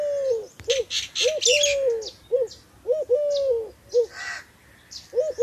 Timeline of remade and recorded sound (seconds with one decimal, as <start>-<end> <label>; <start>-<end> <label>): 0.0-5.4 recorded